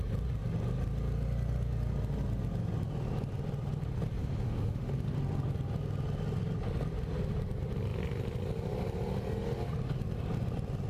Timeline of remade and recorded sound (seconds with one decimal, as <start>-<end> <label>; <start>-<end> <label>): 0.0-4.2 recorded; 4.2-4.9 remade; 4.9-10.9 recorded